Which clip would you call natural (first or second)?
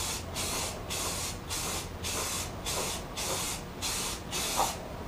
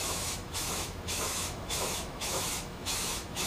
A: first